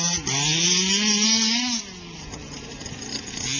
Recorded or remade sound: recorded